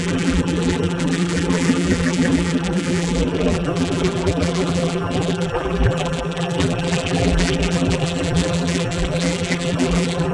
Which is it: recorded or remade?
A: remade